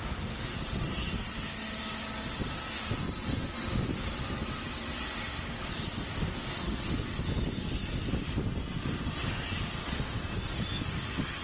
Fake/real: real